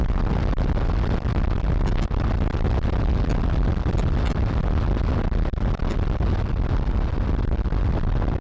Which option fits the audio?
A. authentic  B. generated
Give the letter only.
A